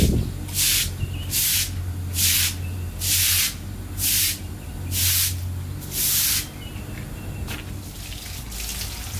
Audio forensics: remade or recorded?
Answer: recorded